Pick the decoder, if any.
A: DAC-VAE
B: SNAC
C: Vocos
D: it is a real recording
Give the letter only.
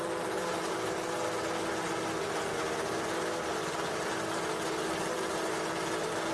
D